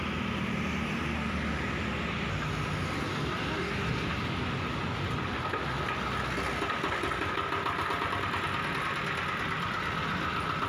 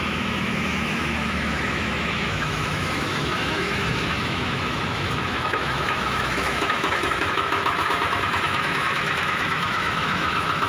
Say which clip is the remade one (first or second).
second